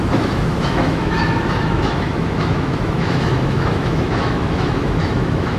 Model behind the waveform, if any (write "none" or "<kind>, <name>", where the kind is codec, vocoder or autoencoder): autoencoder, DAC-VAE